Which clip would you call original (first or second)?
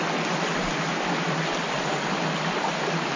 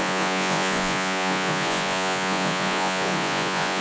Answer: first